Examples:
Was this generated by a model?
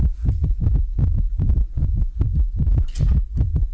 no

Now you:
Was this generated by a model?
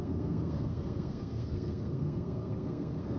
yes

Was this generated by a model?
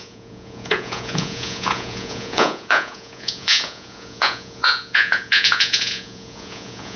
yes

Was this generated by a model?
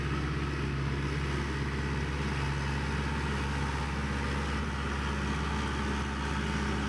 no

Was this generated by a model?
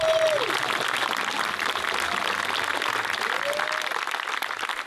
no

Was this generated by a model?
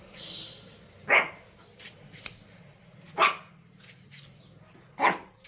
no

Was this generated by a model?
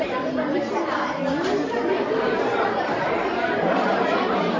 no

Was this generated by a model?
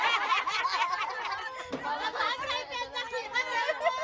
no